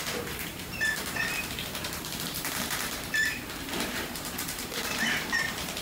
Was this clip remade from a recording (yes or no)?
yes